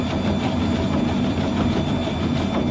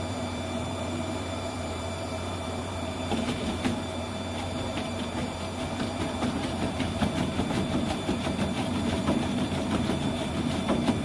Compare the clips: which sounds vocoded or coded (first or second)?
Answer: second